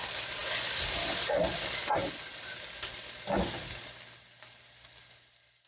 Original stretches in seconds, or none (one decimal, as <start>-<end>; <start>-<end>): 0.0-5.7